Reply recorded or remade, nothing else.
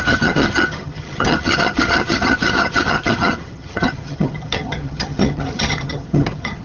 remade